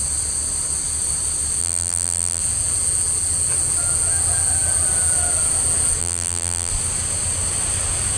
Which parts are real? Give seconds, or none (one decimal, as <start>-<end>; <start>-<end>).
0.0-1.6; 2.4-6.0; 6.7-8.2